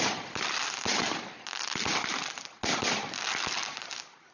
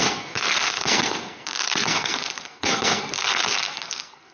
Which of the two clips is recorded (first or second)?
first